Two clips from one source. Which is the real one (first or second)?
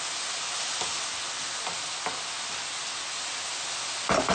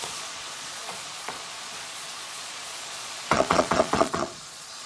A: first